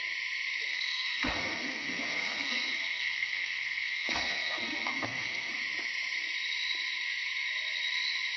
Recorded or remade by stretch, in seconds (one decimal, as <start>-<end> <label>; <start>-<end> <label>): 0.0-0.7 recorded; 0.7-5.5 remade; 5.5-8.4 recorded

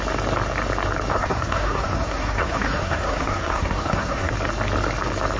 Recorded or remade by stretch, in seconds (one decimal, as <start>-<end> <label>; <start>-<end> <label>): 0.0-1.1 recorded; 1.1-4.3 remade; 4.3-5.4 recorded

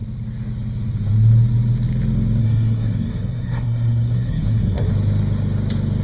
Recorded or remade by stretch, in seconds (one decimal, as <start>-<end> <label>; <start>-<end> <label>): 0.0-2.4 recorded; 2.4-4.9 remade; 4.9-6.0 recorded

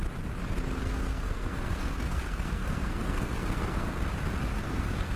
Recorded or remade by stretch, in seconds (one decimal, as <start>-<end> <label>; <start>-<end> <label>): 0.0-0.8 recorded; 0.8-3.9 remade; 3.9-4.5 recorded; 4.5-5.2 remade

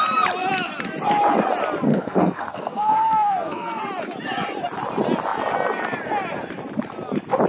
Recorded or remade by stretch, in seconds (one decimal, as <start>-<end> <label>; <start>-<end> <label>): 0.0-1.9 recorded; 1.9-3.9 remade; 3.9-7.5 recorded

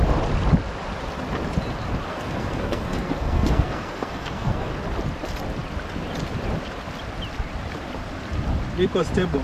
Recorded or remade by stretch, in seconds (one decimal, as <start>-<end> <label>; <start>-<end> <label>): 0.0-2.1 recorded; 2.1-4.7 remade; 4.7-9.4 recorded

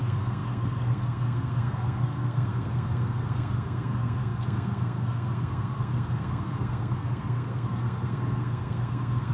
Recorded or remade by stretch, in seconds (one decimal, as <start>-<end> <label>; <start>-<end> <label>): 0.0-9.3 remade

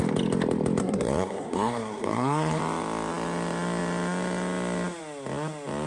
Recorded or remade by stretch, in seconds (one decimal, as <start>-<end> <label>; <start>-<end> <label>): 0.0-0.8 recorded; 0.8-2.6 remade; 2.6-5.9 recorded